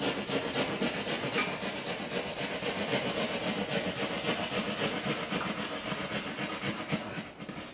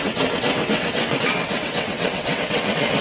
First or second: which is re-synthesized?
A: second